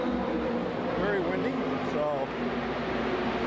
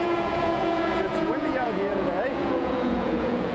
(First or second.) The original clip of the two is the first